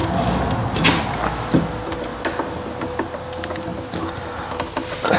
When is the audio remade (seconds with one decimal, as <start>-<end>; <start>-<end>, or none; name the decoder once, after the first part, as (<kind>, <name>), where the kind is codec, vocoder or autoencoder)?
none